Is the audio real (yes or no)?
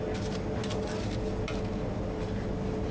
yes